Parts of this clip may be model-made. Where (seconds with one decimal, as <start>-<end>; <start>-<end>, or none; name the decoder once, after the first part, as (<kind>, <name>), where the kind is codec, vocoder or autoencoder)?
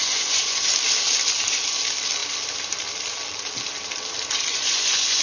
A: 0.0-0.6 (vocoder, Vocos); 4.5-5.2